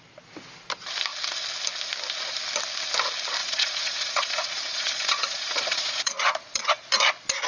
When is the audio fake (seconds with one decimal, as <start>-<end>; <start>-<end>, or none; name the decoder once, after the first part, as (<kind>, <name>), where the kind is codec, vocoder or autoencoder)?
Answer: 3.4-6.7 (vocoder, Vocos)